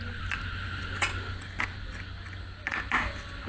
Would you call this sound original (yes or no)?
yes